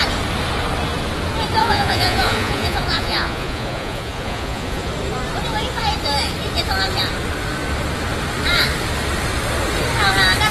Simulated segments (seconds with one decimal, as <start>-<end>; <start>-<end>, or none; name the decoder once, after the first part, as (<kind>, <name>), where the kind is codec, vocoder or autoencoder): 1.6-4.9 (vocoder, Vocos)